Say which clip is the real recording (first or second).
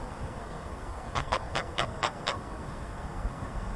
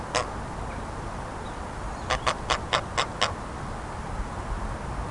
second